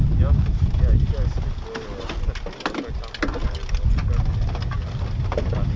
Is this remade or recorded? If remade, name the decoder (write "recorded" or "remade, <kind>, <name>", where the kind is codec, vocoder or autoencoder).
recorded